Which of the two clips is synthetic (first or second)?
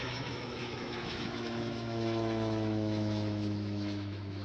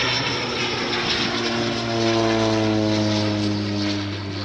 first